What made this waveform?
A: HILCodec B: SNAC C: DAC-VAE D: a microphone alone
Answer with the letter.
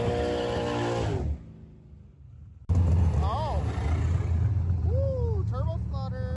D